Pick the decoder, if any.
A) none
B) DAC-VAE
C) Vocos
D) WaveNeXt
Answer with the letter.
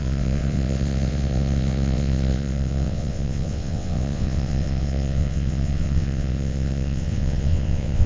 D